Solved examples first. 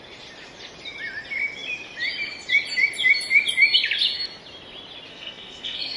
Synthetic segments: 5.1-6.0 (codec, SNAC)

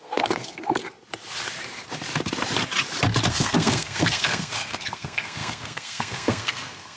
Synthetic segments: 0.0-0.8 (codec, SNAC); 3.3-7.0

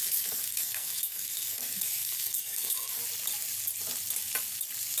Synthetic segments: 0.0-3.0 (codec, SNAC)

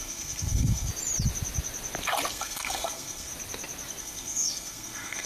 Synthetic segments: 0.0-0.9 (codec, SNAC); 2.3-3.3; 4.0-5.3